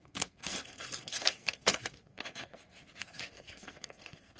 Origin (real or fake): fake